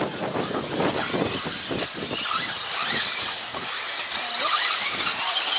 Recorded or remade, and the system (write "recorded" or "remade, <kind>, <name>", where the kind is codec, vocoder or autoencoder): recorded